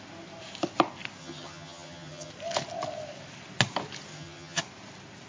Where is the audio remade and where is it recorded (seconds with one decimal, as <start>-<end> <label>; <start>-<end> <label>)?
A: 0.0-1.2 recorded; 1.2-2.3 remade; 2.3-4.1 recorded; 4.1-4.6 remade; 4.6-5.3 recorded